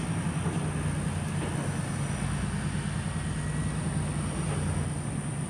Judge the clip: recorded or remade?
recorded